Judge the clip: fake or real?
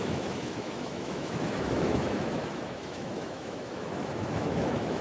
fake